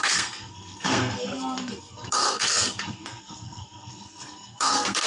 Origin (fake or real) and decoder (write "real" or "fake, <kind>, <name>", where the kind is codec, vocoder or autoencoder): fake, codec, SNAC